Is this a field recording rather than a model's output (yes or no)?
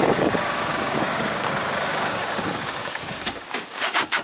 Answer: no